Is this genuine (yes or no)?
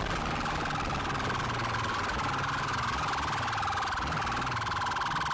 yes